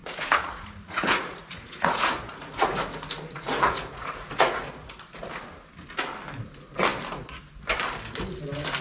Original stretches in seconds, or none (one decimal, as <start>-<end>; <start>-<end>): 5.1-8.8